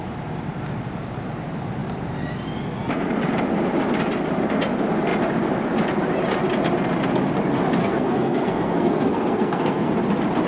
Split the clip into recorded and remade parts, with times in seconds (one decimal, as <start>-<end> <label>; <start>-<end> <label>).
0.0-7.8 recorded; 7.8-9.9 remade; 9.9-10.5 recorded